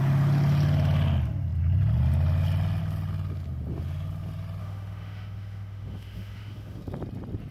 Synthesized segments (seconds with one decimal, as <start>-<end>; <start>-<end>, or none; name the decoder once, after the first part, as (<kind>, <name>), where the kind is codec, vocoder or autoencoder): 4.6-6.8 (autoencoder, DAC-VAE)